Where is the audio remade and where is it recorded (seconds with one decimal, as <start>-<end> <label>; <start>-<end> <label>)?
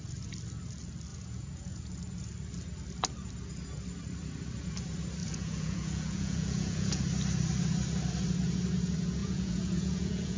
0.0-1.1 recorded; 1.1-1.9 remade; 1.9-5.2 recorded; 5.2-7.0 remade; 7.0-9.2 recorded; 9.2-10.4 remade